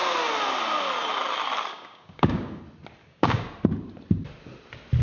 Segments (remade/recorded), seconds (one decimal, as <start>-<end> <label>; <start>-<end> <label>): 0.0-1.7 recorded; 1.7-2.6 remade; 2.6-3.0 recorded; 3.0-3.5 remade; 3.5-5.0 recorded